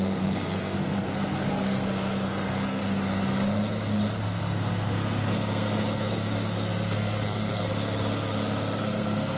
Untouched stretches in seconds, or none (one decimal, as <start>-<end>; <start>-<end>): 2.8-4.2; 7.7-8.8